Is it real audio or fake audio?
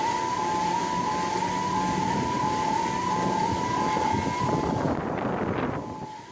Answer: real